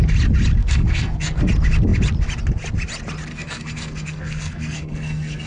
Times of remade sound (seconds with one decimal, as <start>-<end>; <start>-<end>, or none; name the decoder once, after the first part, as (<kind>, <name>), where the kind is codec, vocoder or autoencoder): 0.6-1.5 (codec, SNAC); 3.3-5.5